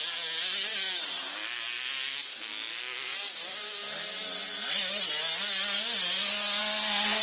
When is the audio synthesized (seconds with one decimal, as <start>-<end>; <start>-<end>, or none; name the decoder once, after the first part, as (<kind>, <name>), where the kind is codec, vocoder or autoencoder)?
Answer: 6.6-7.2 (codec, SNAC)